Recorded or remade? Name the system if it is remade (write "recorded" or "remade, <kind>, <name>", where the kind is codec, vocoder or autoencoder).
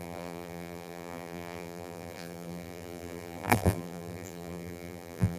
remade, vocoder, BigVGAN v2